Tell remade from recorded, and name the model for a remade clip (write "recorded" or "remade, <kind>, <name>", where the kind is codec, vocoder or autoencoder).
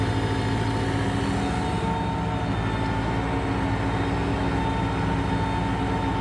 recorded